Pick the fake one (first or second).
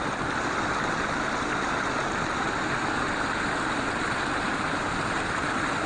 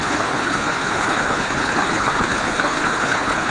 second